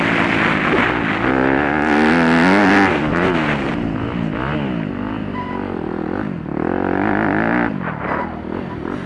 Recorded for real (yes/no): yes